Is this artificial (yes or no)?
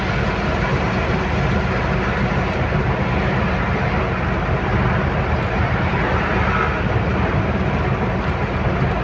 no